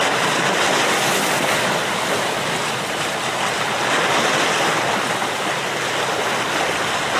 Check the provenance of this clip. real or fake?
real